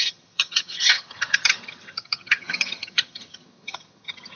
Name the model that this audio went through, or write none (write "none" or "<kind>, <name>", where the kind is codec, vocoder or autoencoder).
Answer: vocoder, HiFi-GAN